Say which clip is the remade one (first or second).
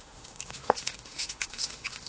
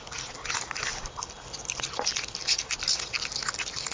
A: first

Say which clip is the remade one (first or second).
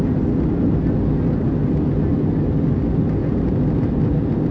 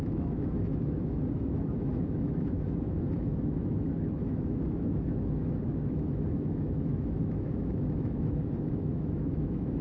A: second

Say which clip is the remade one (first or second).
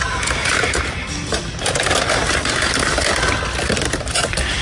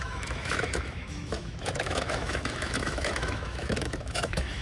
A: second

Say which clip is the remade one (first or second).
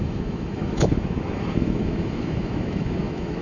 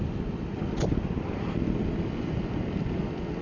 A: first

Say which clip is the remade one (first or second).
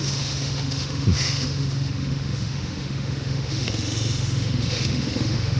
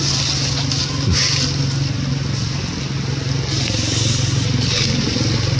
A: first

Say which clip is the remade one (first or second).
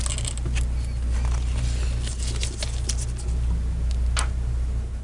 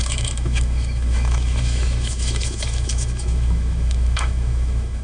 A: second